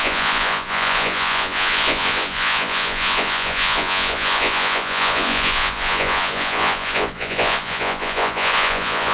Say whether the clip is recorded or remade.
remade